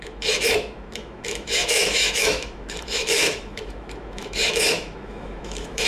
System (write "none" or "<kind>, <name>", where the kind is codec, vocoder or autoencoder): autoencoder, DAC-VAE